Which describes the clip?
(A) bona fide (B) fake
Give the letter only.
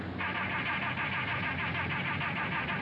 A